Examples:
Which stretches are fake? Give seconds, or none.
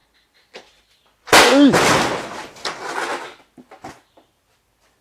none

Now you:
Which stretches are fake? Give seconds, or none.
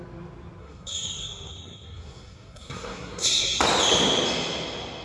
0.6-3.6 (codec, SNAC)